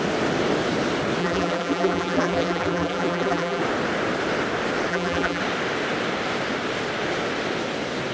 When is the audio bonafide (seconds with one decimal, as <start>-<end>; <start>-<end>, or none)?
0.0-1.2; 3.6-4.9; 5.4-8.1